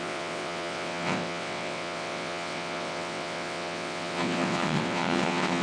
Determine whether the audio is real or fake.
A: fake